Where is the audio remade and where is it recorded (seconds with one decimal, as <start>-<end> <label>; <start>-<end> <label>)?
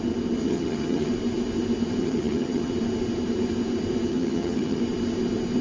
0.0-0.4 recorded; 0.4-1.1 remade; 1.1-2.0 recorded; 2.0-2.7 remade; 2.7-4.1 recorded; 4.1-4.8 remade; 4.8-5.6 recorded